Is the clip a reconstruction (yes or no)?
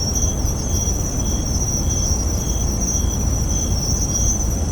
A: no